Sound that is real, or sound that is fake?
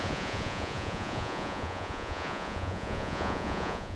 fake